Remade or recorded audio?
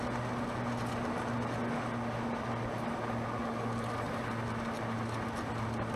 recorded